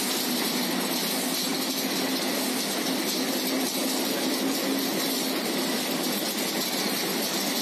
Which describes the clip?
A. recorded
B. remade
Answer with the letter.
A